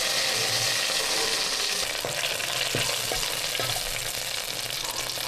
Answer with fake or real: real